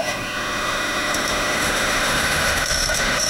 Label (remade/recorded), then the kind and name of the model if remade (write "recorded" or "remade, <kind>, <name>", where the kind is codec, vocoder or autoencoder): remade, autoencoder, DAC-VAE